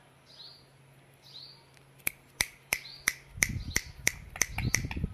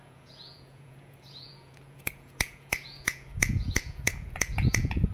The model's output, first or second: second